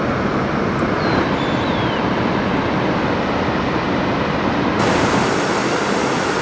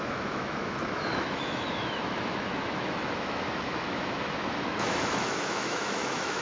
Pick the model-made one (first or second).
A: second